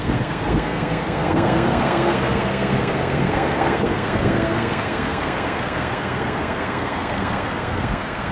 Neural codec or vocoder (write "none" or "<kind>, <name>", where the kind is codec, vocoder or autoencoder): codec, SNAC